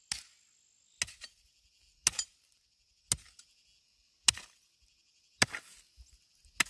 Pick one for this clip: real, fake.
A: real